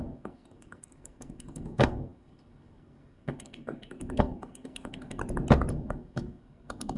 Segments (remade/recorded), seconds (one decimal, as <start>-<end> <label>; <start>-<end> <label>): 0.0-5.2 remade; 5.2-5.7 recorded; 5.7-7.0 remade